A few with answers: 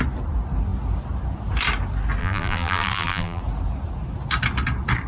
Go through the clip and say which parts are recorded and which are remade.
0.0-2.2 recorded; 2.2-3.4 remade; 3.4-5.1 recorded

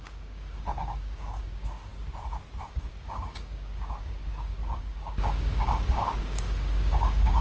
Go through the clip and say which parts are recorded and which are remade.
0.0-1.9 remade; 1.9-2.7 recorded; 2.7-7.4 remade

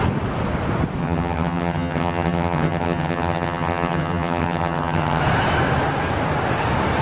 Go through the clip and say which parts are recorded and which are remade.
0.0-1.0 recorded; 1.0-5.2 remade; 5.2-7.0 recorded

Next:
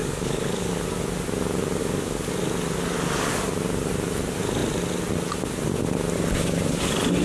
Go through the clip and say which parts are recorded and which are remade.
0.0-0.7 remade; 0.7-1.8 recorded; 1.8-2.3 remade; 2.3-7.2 recorded

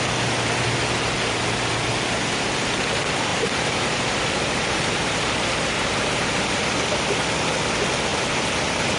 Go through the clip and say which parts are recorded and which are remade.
0.0-3.3 recorded; 3.3-6.6 remade; 6.6-8.1 recorded; 8.1-9.0 remade

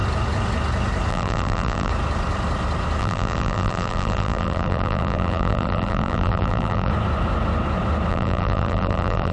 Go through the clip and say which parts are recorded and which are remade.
0.0-1.1 recorded; 1.1-1.9 remade; 1.9-3.0 recorded; 3.0-6.9 remade; 6.9-8.1 recorded; 8.1-9.3 remade

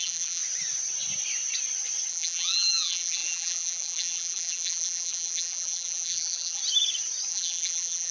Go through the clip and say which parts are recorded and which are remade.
0.0-0.4 remade; 0.4-2.1 recorded; 2.1-6.6 remade; 6.6-7.3 recorded; 7.3-8.1 remade

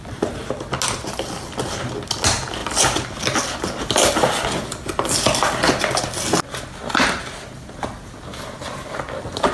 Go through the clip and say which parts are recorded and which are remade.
0.0-9.5 recorded